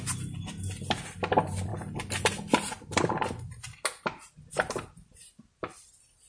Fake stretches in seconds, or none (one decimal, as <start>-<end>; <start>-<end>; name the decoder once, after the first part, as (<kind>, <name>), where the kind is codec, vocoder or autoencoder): none